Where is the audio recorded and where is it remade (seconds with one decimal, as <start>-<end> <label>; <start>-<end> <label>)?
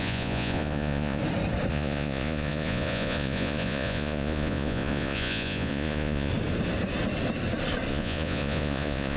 0.0-1.2 remade; 1.2-1.7 recorded; 1.7-6.3 remade; 6.3-7.9 recorded; 7.9-9.2 remade